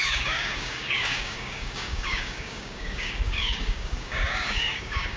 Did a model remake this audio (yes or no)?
yes